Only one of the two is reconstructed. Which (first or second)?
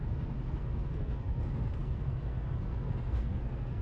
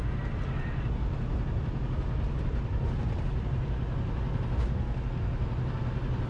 first